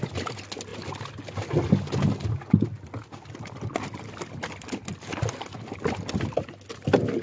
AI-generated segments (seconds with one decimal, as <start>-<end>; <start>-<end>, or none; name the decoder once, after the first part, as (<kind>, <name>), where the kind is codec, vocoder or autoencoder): none